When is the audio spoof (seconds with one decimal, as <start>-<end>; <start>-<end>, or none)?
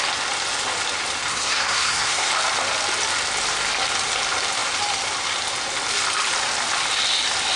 1.3-2.3